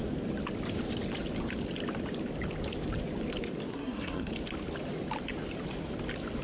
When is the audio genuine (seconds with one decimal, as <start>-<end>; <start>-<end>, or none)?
0.0-3.7; 4.3-6.4